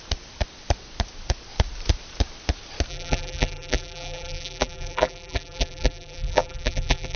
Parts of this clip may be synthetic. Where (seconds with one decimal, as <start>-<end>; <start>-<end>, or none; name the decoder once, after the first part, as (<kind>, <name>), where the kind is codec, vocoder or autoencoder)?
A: 2.9-7.2 (vocoder, BigVGAN v2)